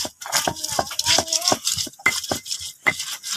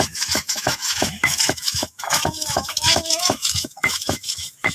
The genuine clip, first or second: first